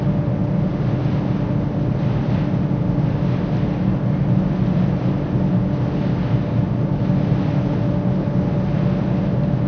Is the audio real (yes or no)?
yes